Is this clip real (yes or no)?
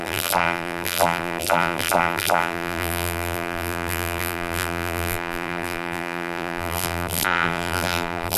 no